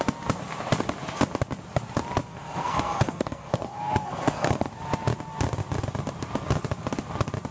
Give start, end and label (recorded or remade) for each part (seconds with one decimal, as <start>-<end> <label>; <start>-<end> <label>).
0.0-2.3 recorded; 2.3-4.7 remade; 4.7-7.5 recorded